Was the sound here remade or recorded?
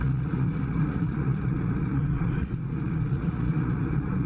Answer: remade